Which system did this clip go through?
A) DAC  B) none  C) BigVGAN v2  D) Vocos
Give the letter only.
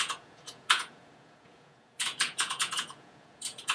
D